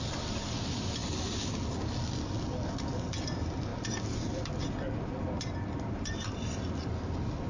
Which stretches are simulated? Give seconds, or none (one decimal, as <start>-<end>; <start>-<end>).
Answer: none